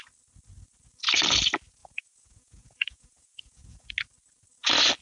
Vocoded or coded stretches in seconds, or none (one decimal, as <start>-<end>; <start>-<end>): 1.8-3.9